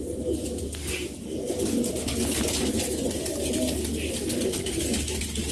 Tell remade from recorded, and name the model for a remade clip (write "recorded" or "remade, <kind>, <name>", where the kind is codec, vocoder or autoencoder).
recorded